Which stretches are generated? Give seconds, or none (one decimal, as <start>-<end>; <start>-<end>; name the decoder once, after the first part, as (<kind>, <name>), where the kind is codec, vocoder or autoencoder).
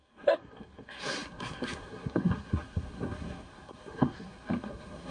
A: 0.0-5.1 (codec, SNAC)